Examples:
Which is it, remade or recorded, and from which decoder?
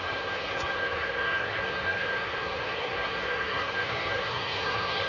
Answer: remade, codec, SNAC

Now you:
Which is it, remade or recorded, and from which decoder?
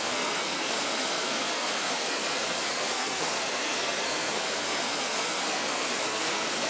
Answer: remade, codec, SNAC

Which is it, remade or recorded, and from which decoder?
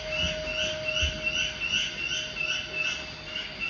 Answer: recorded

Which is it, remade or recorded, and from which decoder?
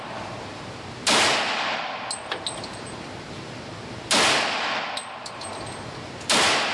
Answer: recorded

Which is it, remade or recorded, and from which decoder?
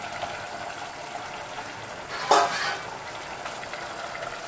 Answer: recorded